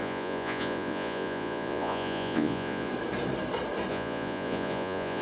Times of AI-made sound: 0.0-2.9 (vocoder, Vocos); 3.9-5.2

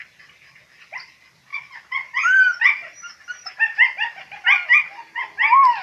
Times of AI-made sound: none

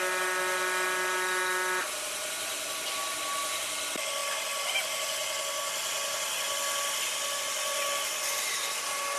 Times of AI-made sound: none

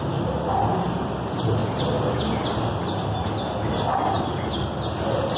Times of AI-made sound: none

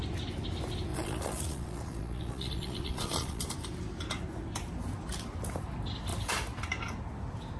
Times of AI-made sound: 0.9-3.4 (vocoder, Vocos)

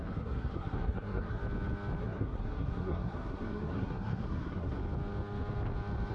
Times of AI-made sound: 0.0-1.4 (codec, SNAC); 2.0-4.8